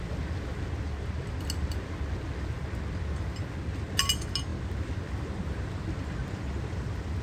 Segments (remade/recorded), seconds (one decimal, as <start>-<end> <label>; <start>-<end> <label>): 0.0-7.2 recorded